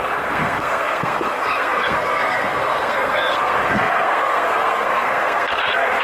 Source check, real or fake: fake